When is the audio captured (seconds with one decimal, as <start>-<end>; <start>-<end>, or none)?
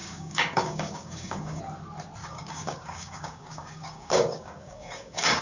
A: 1.6-2.2